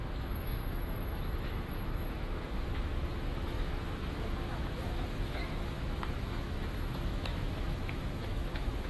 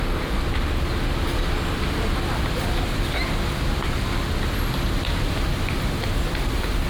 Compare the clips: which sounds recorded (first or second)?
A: second